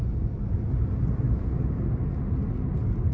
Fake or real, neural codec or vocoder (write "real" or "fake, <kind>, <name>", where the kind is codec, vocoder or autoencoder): real